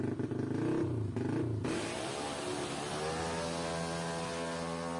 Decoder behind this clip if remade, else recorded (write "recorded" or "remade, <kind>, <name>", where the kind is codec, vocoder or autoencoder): recorded